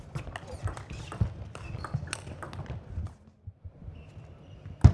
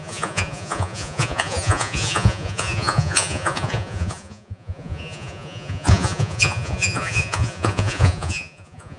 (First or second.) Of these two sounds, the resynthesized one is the second